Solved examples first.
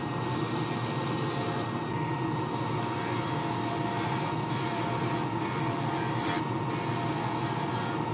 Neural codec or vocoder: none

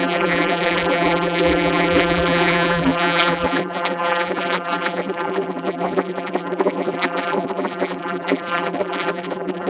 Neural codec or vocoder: vocoder, BigVGAN v2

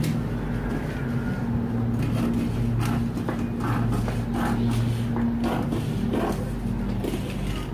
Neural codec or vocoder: none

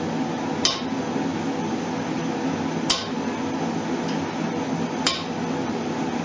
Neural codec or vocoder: none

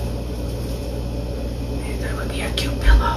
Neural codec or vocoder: none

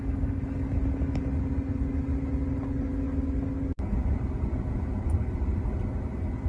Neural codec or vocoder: none